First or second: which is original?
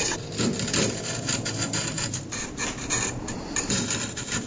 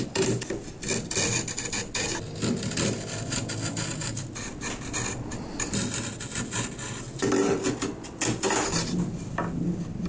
second